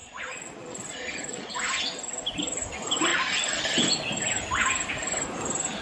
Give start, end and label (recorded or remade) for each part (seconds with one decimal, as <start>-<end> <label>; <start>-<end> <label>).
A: 0.0-1.5 remade; 1.5-3.1 recorded; 3.1-3.6 remade; 3.6-5.8 recorded